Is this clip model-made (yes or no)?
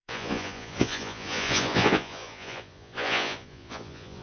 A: yes